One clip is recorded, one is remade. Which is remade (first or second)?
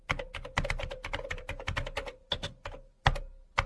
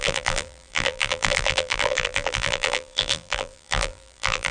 second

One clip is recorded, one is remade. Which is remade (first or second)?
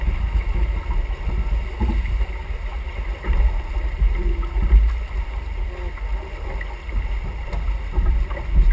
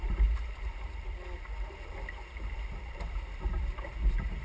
second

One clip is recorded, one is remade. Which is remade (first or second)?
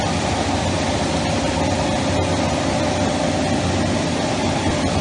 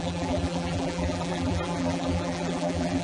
second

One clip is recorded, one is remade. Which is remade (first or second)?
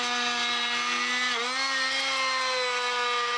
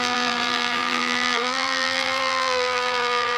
second